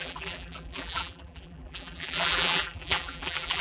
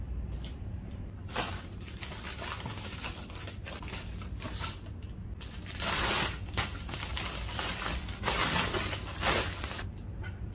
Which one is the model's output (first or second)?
first